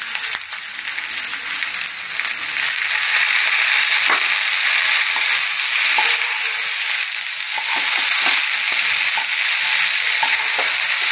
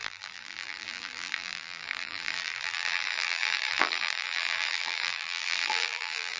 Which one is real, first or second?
first